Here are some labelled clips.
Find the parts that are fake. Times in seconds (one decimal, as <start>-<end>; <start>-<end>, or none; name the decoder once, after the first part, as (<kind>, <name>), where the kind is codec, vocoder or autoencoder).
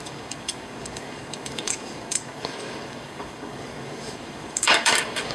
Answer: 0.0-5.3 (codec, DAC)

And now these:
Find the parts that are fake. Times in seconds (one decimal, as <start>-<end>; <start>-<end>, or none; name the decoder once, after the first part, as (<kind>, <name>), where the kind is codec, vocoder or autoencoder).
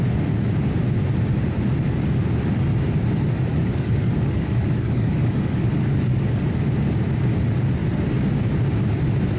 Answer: 3.5-6.5 (codec, DAC)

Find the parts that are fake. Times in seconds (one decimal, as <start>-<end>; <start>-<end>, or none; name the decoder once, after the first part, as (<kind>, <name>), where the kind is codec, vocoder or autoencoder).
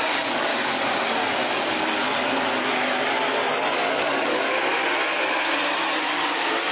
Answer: 0.0-0.5 (codec, DAC); 3.7-4.7; 6.0-6.7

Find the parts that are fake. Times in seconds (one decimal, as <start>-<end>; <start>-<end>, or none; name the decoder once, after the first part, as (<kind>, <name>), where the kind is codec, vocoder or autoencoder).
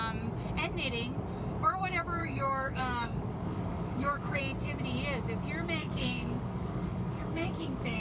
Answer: 2.2-4.4 (codec, DAC); 5.8-8.0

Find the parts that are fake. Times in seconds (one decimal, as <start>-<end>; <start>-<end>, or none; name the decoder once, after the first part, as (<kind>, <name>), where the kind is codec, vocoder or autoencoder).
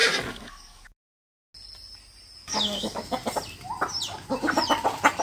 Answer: 0.0-1.0 (codec, DAC); 2.4-3.0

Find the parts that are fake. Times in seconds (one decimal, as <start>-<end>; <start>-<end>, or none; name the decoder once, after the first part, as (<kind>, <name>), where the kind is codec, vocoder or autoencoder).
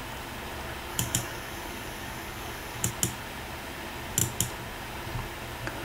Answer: 0.9-2.9 (codec, DAC)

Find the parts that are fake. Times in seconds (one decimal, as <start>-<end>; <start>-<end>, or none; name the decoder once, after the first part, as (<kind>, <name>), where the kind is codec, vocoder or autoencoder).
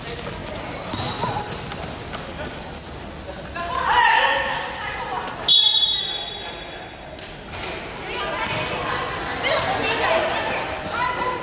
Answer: none